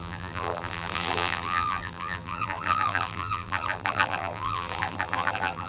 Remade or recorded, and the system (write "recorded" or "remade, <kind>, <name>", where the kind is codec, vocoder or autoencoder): remade, vocoder, BigVGAN v2